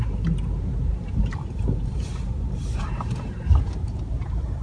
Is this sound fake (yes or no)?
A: yes